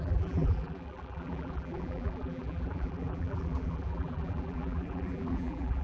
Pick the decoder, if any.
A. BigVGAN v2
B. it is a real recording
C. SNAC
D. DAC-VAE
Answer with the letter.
A